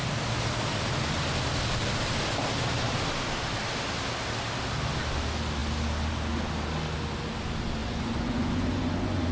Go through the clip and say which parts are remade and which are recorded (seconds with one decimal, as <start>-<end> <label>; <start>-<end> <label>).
0.0-7.8 recorded; 7.8-9.3 remade